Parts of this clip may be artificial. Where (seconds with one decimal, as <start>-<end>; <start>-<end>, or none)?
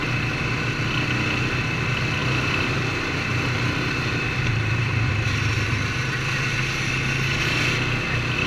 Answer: 2.2-5.1